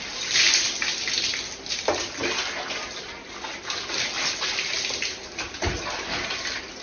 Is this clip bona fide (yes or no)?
yes